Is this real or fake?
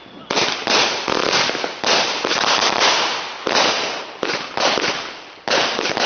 fake